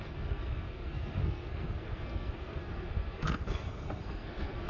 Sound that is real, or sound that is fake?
fake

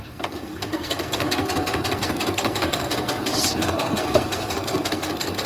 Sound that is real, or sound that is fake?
fake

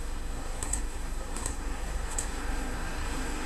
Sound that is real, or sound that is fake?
fake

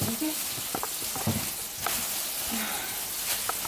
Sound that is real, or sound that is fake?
real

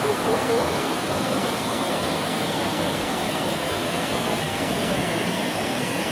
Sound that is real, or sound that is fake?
fake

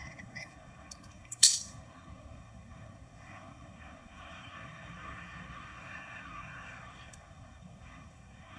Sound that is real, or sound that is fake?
fake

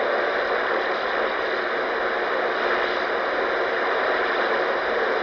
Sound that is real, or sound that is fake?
real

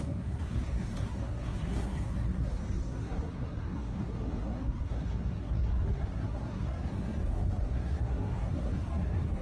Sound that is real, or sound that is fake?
fake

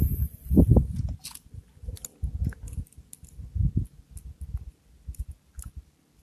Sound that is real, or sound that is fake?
real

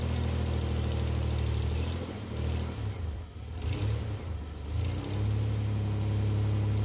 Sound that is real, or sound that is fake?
real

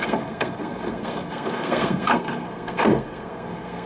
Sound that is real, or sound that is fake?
fake